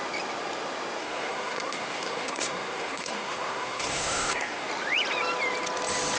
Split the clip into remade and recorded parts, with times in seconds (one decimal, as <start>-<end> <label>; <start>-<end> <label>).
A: 0.0-1.0 recorded; 1.0-4.7 remade; 4.7-6.2 recorded